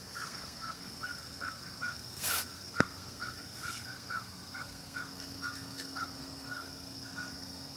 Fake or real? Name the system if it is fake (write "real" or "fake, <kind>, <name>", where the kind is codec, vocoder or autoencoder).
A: fake, codec, SNAC